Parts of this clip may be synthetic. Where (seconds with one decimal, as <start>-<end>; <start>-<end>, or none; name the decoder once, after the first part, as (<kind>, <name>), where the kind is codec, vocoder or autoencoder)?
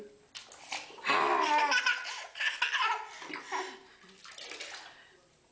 none